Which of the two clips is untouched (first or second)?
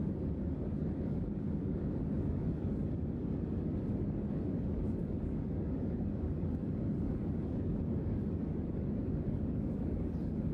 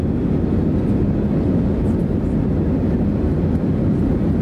second